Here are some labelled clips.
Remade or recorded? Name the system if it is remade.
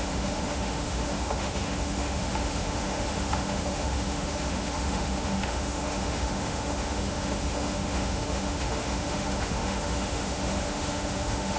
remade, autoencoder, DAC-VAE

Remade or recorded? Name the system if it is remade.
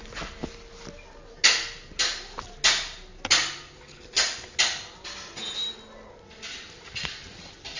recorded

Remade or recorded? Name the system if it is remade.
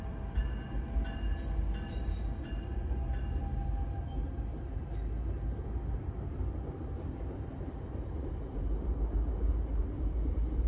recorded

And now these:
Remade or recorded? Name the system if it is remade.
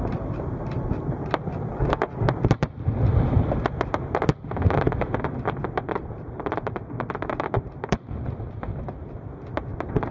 remade, vocoder, BigVGAN v2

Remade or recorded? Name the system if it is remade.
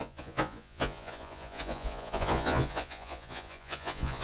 remade, vocoder, Vocos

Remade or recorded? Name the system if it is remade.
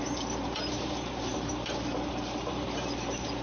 remade, vocoder, BigVGAN v2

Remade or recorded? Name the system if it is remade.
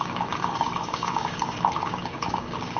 remade, codec, DAC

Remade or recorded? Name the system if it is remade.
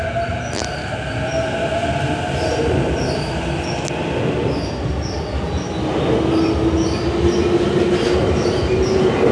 recorded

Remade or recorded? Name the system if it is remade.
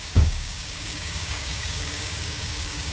remade, codec, DAC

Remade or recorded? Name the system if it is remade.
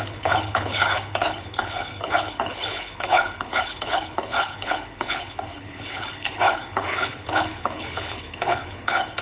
remade, codec, HILCodec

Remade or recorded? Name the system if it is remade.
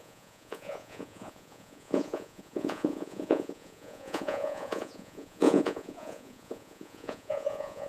remade, vocoder, Vocos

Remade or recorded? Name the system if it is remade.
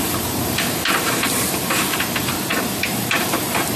remade, vocoder, BigVGAN v2